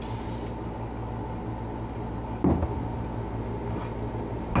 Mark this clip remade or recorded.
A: recorded